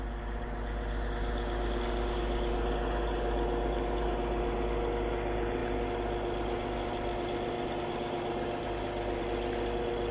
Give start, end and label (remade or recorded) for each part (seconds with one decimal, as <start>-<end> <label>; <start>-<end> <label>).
0.0-10.1 recorded